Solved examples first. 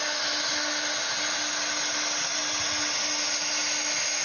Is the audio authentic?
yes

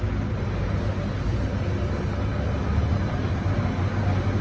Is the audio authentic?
yes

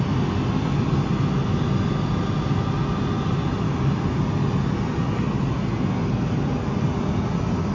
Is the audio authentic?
yes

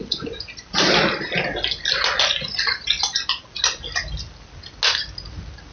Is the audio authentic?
yes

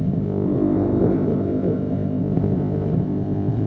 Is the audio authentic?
no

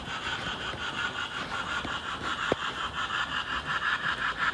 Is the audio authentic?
yes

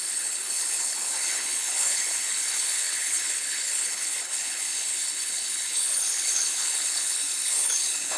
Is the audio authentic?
no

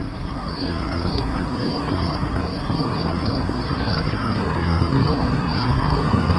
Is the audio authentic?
no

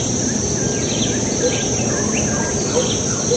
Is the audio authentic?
yes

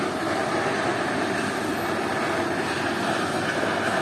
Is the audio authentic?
yes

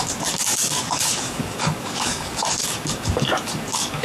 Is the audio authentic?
no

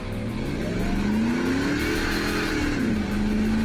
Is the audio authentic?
yes